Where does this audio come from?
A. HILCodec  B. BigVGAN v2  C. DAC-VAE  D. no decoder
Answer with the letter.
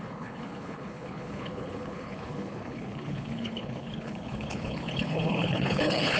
A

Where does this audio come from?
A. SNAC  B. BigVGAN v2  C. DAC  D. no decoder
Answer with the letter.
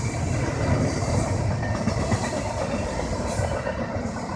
D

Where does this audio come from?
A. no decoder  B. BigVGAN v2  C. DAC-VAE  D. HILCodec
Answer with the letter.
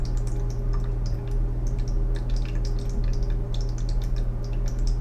A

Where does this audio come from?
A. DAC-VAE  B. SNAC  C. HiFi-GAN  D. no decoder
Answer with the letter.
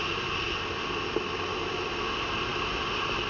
D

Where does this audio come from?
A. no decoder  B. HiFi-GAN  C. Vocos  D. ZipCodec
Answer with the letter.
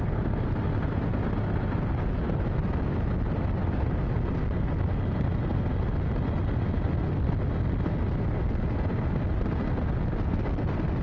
A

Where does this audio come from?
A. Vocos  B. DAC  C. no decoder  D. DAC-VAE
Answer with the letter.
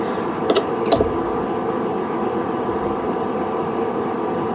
C